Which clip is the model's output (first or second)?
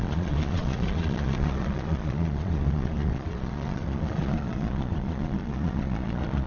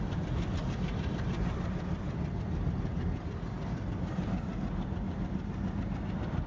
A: first